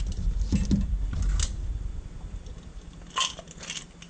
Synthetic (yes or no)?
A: no